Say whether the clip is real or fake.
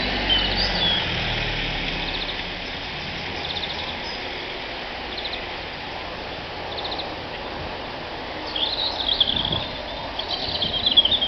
real